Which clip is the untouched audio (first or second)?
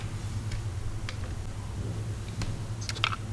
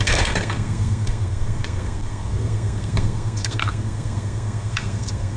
first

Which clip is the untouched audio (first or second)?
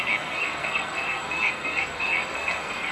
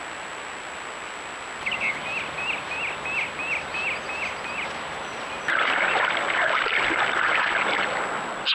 second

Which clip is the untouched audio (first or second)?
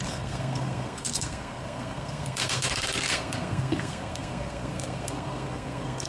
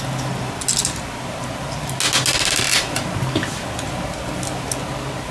second